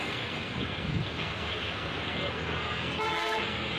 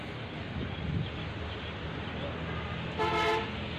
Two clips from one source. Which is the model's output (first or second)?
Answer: first